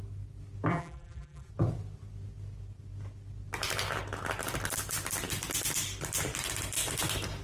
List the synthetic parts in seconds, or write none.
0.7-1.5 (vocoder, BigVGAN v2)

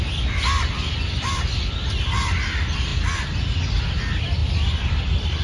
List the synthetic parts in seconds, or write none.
4.4-5.0 (vocoder, BigVGAN v2)

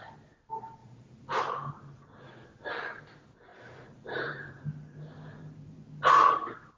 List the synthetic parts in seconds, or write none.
0.8-1.4 (vocoder, BigVGAN v2); 3.5-4.6